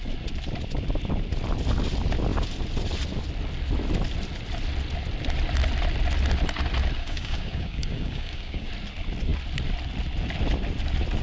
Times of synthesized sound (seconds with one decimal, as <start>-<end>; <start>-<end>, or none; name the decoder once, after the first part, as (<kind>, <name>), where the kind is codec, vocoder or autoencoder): 7.0-8.7 (codec, DAC)